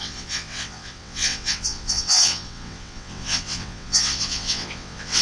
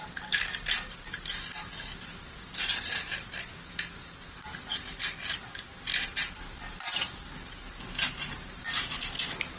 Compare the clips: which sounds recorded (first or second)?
second